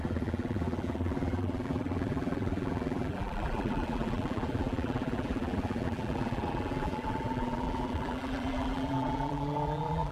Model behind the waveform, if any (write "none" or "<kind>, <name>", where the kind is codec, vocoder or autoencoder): vocoder, BigVGAN v2